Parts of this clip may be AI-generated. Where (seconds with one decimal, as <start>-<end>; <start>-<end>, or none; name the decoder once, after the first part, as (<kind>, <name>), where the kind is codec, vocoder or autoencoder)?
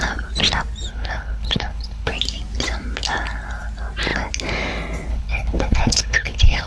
0.9-2.1 (codec, HILCodec); 5.1-6.7